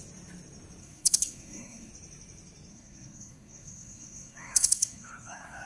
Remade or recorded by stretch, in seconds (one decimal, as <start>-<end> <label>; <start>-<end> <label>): 0.0-0.8 recorded; 0.8-1.9 remade; 1.9-2.7 recorded; 2.7-5.7 remade